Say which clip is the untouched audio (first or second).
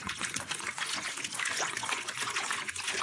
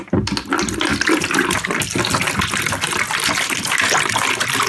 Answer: second